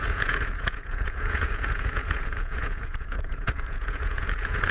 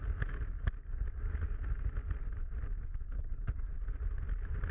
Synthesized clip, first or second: first